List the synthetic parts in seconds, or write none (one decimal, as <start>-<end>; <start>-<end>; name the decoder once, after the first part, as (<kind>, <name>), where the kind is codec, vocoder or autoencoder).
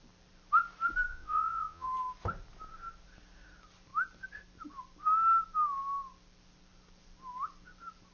1.1-1.9 (vocoder, Vocos)